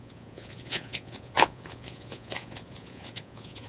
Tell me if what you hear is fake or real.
fake